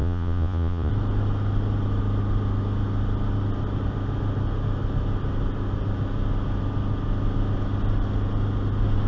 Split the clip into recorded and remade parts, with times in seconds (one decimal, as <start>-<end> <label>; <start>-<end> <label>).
0.0-0.9 remade; 0.9-9.1 recorded